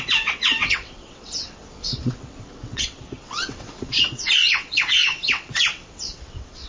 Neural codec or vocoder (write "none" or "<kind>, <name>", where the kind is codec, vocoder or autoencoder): vocoder, WaveNeXt